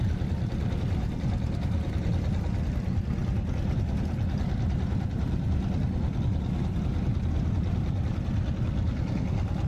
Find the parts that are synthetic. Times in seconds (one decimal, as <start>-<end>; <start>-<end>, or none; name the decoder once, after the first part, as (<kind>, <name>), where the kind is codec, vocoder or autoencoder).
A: none